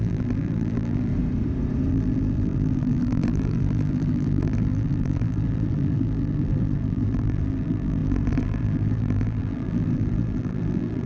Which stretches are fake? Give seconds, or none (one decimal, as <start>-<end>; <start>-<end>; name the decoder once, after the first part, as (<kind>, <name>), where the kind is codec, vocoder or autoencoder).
0.0-1.1 (vocoder, BigVGAN v2); 1.9-11.1